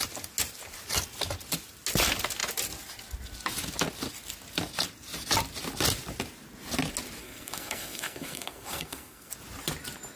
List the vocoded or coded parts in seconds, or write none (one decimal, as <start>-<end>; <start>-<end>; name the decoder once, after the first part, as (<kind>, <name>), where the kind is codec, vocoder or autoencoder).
7.2-9.3 (codec, SNAC)